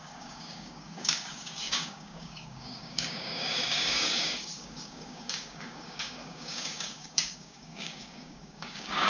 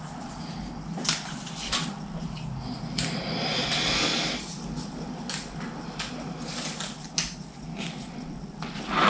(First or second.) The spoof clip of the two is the first